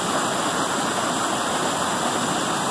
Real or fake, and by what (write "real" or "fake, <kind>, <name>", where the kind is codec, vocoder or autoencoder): real